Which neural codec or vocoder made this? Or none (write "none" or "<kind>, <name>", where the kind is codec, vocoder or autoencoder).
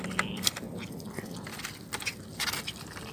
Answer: none